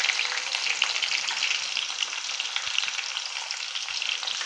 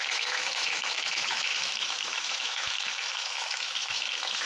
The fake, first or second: second